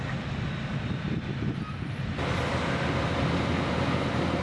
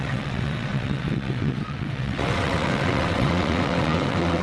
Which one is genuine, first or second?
first